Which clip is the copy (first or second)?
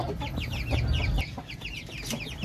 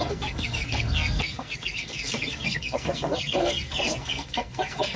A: second